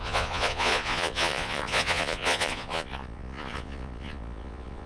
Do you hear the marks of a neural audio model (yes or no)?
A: yes